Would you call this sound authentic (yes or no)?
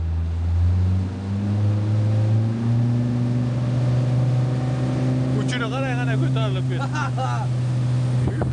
yes